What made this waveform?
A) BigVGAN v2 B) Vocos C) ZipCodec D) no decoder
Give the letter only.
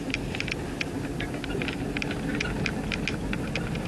D